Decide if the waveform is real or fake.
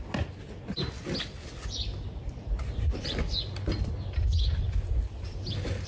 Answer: real